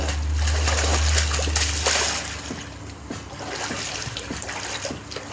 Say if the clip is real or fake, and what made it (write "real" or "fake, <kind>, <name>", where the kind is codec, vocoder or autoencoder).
real